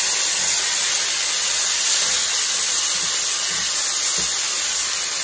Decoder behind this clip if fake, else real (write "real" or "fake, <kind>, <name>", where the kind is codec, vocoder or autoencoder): real